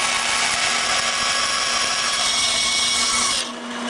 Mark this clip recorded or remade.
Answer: recorded